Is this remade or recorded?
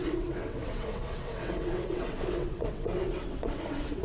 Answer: remade